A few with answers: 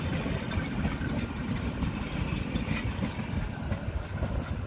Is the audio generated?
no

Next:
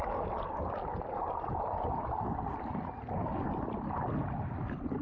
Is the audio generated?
no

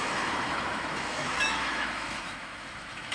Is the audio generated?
yes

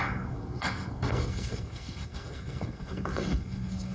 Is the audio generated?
yes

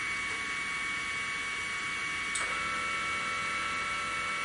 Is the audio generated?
no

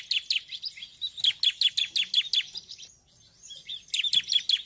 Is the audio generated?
no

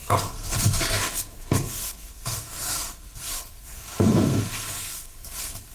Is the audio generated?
yes